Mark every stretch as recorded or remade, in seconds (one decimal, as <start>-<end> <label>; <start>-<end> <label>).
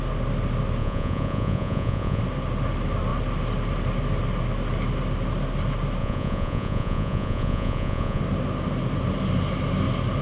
0.0-0.8 recorded; 0.8-2.2 remade; 2.2-6.0 recorded; 6.0-8.2 remade; 8.2-10.2 recorded